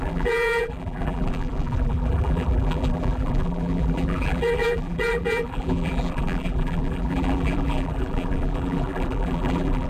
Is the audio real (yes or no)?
no